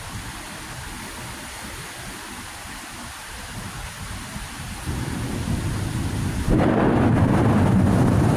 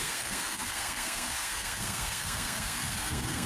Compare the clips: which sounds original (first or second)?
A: first